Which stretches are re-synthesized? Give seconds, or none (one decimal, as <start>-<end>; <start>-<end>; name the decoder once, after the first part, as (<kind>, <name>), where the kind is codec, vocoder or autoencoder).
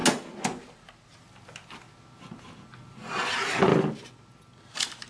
3.1-3.7 (vocoder, BigVGAN v2)